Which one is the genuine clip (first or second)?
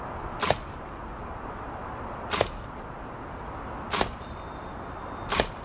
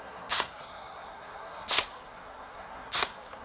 first